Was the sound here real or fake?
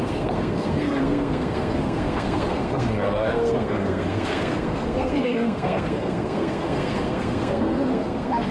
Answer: fake